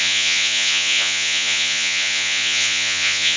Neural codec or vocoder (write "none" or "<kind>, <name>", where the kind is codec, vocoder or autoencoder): vocoder, Vocos